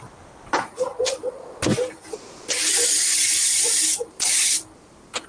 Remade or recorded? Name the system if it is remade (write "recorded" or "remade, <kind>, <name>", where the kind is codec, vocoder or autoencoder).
remade, vocoder, BigVGAN v2